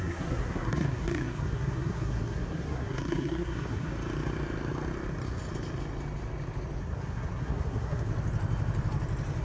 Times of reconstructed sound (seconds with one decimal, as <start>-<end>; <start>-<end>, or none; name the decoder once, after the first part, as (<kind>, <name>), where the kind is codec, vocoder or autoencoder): 0.0-3.9 (codec, SNAC); 6.8-8.1